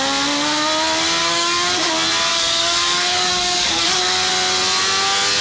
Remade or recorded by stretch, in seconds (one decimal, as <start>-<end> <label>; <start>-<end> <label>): 0.0-1.2 recorded; 1.2-1.9 remade; 1.9-2.3 recorded; 2.3-4.3 remade; 4.3-5.4 recorded